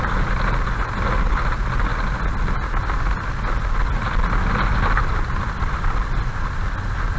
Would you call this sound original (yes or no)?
yes